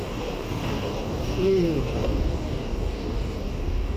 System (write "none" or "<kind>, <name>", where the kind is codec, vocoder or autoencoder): codec, DAC